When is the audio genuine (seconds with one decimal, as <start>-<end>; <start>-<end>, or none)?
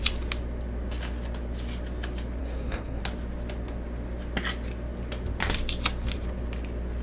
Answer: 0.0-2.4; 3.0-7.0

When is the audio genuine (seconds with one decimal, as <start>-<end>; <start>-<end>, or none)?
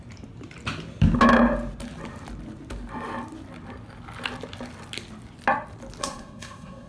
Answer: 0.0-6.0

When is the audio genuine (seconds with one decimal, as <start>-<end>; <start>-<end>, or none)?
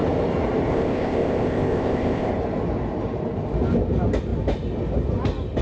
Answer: 0.0-0.7; 2.3-5.6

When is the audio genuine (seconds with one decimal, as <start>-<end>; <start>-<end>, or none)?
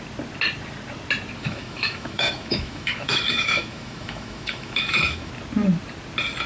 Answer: 0.0-1.4; 5.3-6.5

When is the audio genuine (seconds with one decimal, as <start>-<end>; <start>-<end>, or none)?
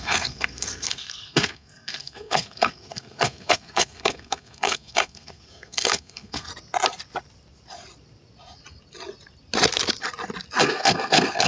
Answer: 6.5-10.6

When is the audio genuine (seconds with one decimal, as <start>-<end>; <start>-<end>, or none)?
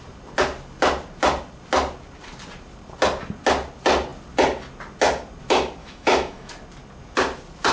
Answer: 0.0-5.8; 6.5-7.7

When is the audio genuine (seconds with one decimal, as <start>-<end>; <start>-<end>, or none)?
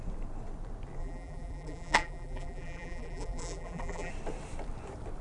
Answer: 0.0-1.0; 4.1-5.2